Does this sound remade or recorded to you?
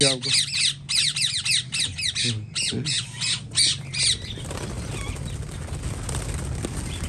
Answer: recorded